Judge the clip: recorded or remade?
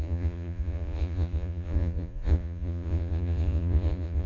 remade